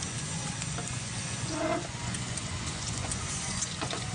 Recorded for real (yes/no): no